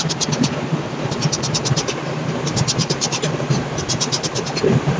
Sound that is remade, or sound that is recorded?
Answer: remade